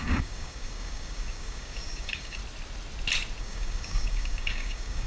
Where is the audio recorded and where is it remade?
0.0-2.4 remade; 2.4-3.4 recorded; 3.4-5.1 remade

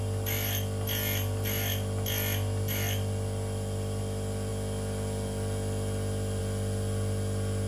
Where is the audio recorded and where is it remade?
0.0-7.7 recorded

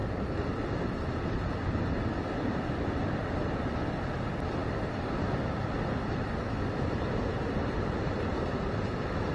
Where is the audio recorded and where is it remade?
0.0-9.3 recorded

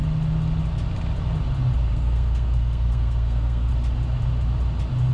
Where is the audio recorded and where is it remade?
0.0-1.9 recorded; 1.9-3.7 remade; 3.7-5.1 recorded